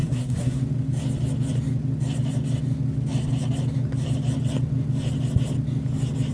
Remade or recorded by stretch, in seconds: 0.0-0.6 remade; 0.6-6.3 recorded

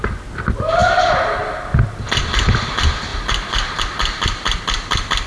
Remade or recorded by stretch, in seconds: 0.0-0.8 recorded; 0.8-1.6 remade; 1.6-3.1 recorded; 3.1-3.8 remade; 3.8-5.3 recorded

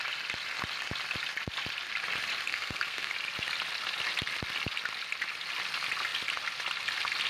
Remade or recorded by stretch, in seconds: 0.0-2.5 recorded; 2.5-3.1 remade; 3.1-7.3 recorded

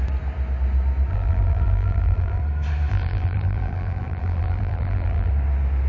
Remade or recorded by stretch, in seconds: 0.0-1.1 recorded; 1.1-2.4 remade; 2.4-2.9 recorded; 2.9-5.3 remade; 5.3-5.9 recorded

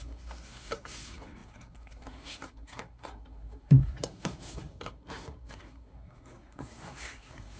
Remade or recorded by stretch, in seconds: 0.0-7.6 remade

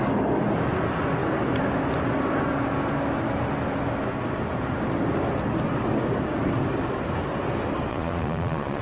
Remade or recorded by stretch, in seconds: 0.0-7.9 recorded; 7.9-8.8 remade

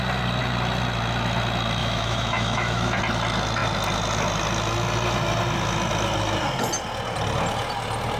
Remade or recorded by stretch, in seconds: 0.0-1.8 recorded; 1.8-3.0 remade; 3.0-8.2 recorded

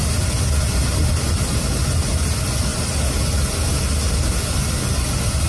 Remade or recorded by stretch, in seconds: 0.0-5.5 recorded